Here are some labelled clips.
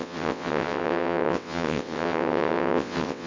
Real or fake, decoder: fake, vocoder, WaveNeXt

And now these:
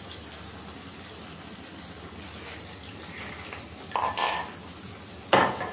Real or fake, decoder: real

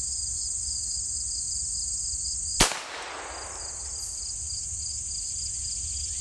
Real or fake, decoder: real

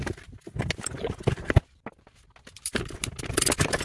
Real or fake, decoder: real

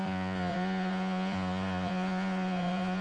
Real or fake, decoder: fake, vocoder, Vocos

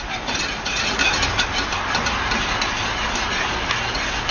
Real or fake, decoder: real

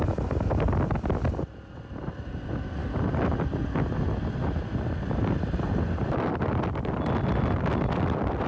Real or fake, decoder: real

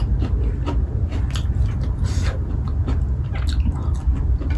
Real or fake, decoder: real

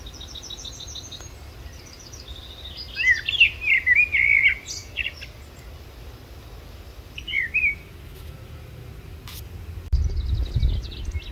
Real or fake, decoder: real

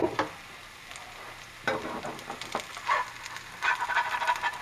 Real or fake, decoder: real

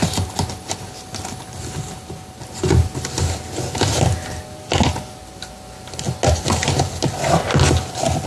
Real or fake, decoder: real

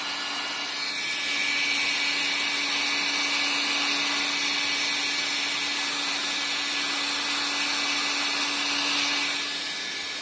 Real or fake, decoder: real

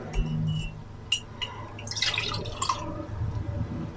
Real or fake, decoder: real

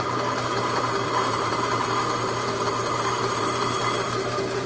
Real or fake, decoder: fake, vocoder, BigVGAN v2